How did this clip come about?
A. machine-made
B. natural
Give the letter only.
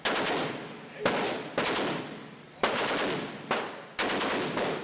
B